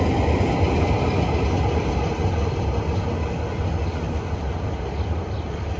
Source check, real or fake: real